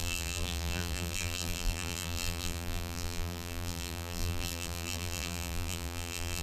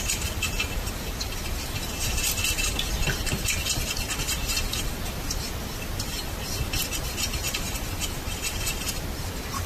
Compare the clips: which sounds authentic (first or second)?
second